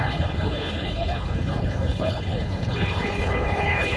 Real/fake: fake